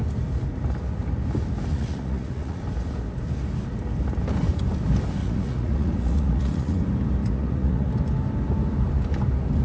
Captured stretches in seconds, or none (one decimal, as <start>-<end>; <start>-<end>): 0.0-1.7; 2.6-5.2; 6.8-7.2; 7.9-9.6